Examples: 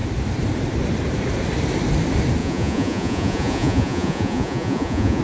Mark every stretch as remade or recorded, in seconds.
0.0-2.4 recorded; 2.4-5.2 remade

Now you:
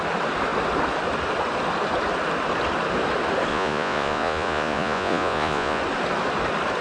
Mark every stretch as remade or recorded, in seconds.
0.0-3.5 recorded; 3.5-5.8 remade; 5.8-6.8 recorded

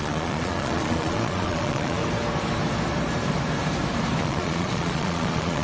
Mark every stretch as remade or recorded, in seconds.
0.0-2.0 remade; 2.0-4.2 recorded; 4.2-5.6 remade

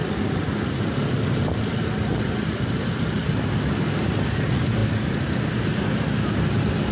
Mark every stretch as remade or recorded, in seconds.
0.0-6.9 recorded

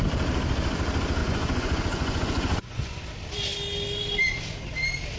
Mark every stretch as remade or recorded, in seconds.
0.0-1.2 recorded; 1.2-3.0 remade; 3.0-5.2 recorded

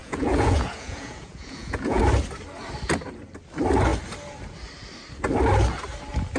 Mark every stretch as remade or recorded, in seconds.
0.0-2.0 remade; 2.0-6.4 recorded

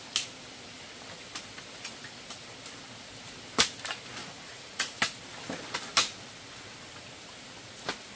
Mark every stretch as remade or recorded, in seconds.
0.0-4.2 recorded; 4.2-5.0 remade; 5.0-8.2 recorded

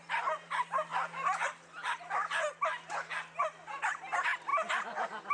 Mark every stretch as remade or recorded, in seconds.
0.0-5.3 recorded